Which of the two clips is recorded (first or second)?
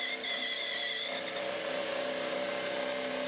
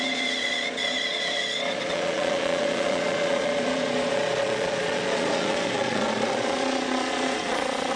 first